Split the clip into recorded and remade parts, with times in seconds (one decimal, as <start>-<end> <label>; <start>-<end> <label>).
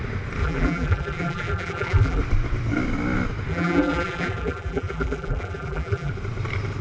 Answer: 0.0-0.4 recorded; 0.4-2.2 remade; 2.2-3.5 recorded; 3.5-6.1 remade; 6.1-6.8 recorded